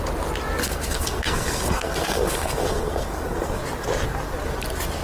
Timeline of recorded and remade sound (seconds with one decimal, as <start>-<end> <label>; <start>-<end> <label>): 0.0-0.6 recorded; 0.6-3.6 remade; 3.6-5.0 recorded